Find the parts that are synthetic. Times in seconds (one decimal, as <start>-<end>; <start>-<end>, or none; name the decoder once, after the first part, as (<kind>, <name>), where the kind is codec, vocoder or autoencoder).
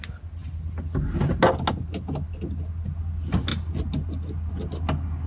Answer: none